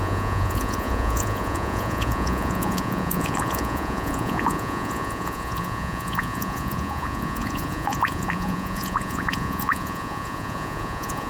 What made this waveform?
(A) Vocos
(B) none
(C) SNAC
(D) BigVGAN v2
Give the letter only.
A